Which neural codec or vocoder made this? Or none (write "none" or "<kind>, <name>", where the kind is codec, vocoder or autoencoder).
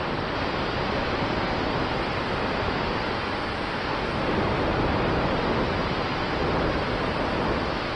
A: none